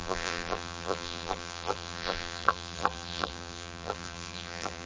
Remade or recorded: remade